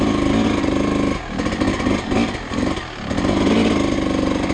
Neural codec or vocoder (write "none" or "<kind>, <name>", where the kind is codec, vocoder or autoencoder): none